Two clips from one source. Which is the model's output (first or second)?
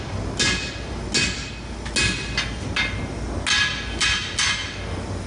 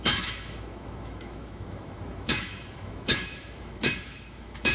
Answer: second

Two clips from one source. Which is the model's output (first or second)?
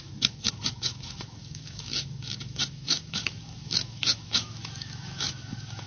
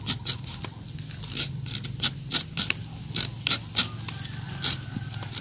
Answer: first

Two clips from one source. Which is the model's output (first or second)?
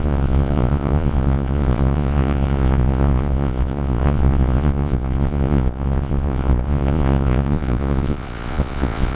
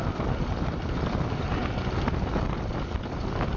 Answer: first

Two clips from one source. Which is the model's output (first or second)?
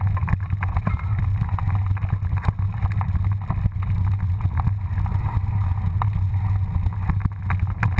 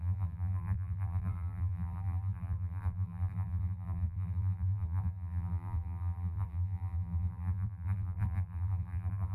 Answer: second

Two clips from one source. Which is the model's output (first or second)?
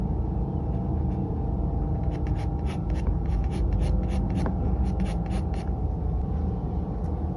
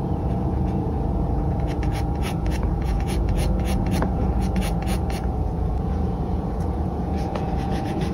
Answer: second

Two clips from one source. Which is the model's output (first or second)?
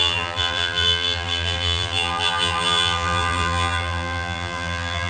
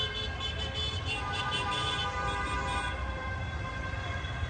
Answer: first